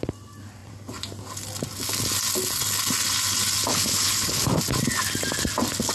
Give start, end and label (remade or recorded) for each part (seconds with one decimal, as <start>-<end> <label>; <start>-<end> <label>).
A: 0.0-3.7 recorded; 3.7-4.5 remade; 4.5-5.9 recorded